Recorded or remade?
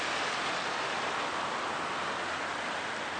recorded